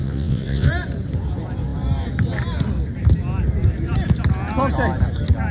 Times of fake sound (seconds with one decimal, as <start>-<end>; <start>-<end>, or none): 0.0-0.7